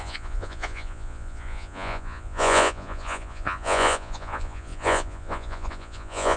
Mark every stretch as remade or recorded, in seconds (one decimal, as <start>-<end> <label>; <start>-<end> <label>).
0.0-6.4 remade